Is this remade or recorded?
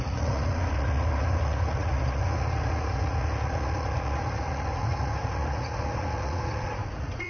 remade